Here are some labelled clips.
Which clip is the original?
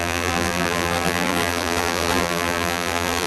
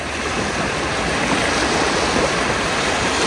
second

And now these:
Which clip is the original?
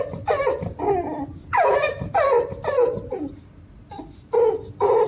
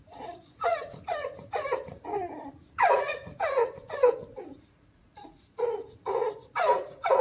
first